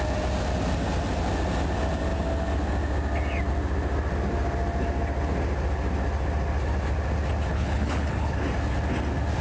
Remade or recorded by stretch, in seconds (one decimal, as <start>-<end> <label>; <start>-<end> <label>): 0.0-7.5 recorded; 7.5-8.3 remade; 8.3-9.4 recorded